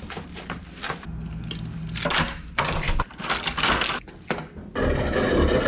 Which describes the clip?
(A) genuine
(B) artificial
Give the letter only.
A